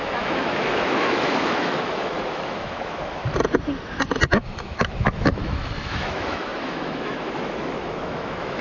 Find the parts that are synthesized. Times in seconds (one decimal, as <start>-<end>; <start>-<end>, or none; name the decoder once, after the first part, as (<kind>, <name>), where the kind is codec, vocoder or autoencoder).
0.0-3.2 (autoencoder, DAC-VAE); 4.3-8.6